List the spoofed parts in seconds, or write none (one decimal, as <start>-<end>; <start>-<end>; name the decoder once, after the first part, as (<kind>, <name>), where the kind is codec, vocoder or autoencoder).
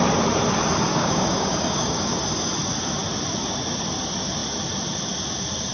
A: 0.9-2.2 (codec, DAC)